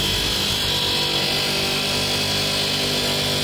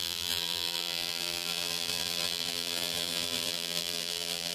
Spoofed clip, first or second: second